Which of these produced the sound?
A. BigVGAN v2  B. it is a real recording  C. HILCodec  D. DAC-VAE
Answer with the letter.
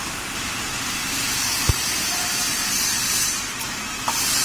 A